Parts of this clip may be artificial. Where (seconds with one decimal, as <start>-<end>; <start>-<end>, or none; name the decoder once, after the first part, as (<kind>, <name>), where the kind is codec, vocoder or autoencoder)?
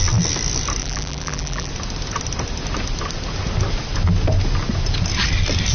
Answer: 0.8-1.7 (vocoder, BigVGAN v2)